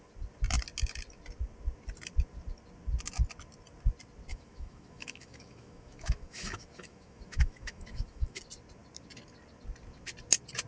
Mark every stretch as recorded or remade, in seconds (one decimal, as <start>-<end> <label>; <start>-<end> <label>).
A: 0.0-4.3 recorded; 4.3-8.4 remade; 8.4-10.7 recorded